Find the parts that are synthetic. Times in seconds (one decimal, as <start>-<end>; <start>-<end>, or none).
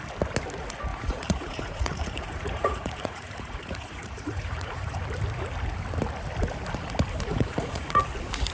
0.9-5.0; 7.3-8.0